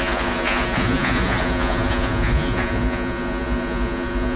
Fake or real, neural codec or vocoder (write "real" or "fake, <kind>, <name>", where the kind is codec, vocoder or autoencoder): fake, vocoder, Vocos